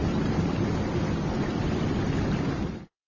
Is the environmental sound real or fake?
fake